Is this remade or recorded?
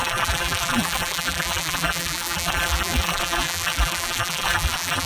remade